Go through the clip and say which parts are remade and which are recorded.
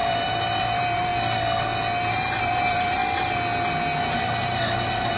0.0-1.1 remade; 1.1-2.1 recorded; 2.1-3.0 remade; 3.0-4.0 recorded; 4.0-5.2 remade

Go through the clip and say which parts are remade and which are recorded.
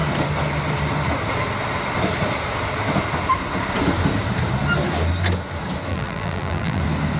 0.0-5.9 recorded; 5.9-6.8 remade; 6.8-7.2 recorded